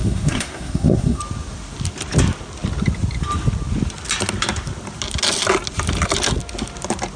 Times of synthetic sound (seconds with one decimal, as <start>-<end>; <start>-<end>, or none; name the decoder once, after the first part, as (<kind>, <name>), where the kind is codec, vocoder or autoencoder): 0.0-1.2 (codec, SNAC)